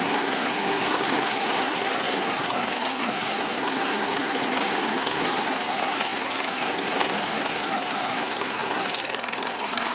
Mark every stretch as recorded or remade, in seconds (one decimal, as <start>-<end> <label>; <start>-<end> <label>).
0.0-9.9 remade